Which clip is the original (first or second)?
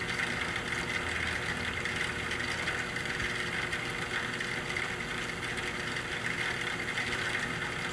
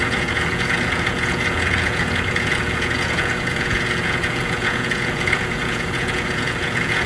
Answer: first